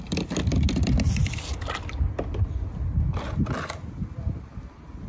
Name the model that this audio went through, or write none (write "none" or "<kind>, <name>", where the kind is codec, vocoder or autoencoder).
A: none